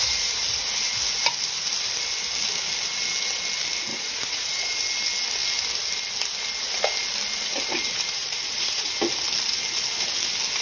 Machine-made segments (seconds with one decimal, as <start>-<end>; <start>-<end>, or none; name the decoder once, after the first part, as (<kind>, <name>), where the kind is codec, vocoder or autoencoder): 3.9-4.8 (vocoder, Vocos); 8.2-8.9